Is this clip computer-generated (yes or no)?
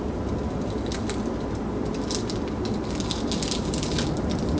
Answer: no